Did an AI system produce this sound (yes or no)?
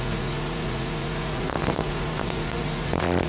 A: yes